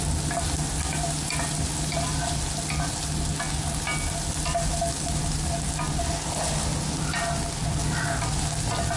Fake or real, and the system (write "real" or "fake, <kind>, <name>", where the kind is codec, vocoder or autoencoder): real